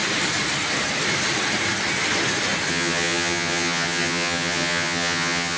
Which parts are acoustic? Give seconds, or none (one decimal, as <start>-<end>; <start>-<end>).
0.0-2.7